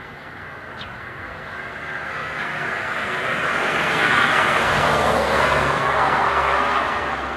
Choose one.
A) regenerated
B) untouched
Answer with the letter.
A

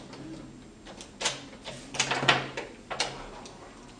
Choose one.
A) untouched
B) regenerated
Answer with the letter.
A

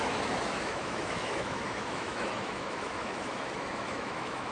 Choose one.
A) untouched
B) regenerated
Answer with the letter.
B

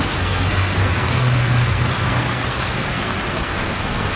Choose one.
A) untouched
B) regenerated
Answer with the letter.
B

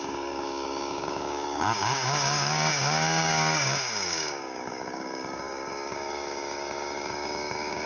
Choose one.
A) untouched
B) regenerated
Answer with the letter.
B